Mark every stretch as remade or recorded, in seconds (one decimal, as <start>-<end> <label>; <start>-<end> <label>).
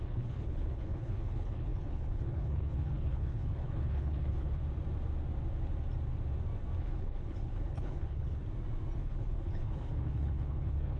0.0-4.6 remade; 4.6-6.8 recorded; 6.8-8.4 remade; 8.4-9.0 recorded; 9.0-11.0 remade